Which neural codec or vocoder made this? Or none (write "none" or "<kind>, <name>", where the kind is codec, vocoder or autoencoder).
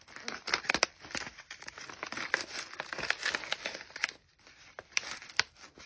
none